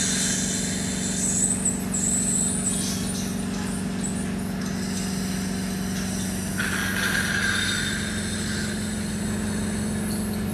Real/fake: real